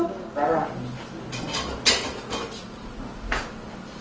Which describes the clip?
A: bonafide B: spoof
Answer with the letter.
A